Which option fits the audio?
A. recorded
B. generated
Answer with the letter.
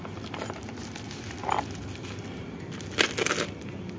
A